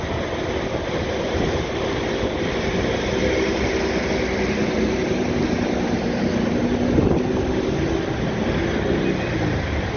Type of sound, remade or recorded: recorded